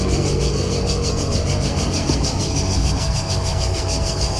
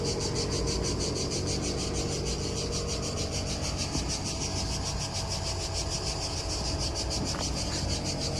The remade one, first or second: first